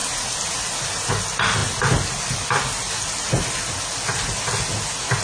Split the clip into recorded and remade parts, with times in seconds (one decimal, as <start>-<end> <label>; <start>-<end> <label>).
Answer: 0.0-5.2 recorded